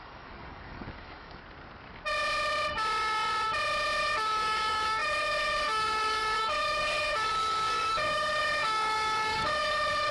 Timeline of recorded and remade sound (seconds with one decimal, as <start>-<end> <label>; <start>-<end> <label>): 0.0-1.4 remade; 1.4-4.0 recorded; 4.0-10.1 remade